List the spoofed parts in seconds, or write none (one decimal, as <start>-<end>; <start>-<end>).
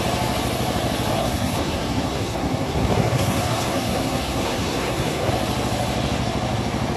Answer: 1.1-5.3